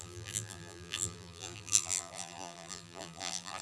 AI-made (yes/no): yes